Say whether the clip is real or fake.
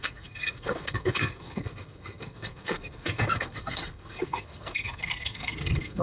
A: fake